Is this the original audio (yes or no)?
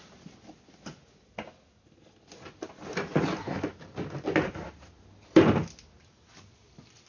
yes